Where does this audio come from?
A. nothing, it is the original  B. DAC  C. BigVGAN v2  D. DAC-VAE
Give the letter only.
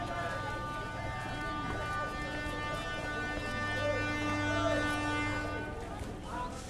A